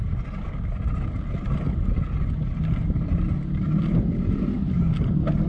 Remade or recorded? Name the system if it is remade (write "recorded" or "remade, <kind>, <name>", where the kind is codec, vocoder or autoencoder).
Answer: recorded